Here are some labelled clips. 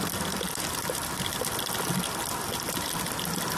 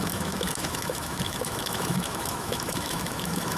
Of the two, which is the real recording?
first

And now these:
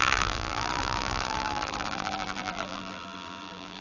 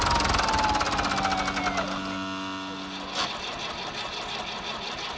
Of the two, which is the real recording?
second